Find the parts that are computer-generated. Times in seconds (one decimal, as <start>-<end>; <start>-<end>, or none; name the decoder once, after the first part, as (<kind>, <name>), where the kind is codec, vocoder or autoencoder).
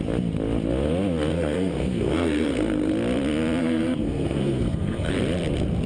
1.3-2.9 (codec, SNAC); 3.6-5.1